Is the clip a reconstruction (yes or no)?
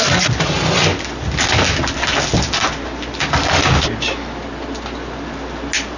no